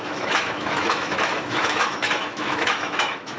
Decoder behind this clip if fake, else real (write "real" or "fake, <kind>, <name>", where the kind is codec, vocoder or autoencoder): fake, autoencoder, DAC-VAE